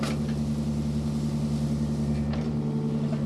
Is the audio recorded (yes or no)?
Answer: yes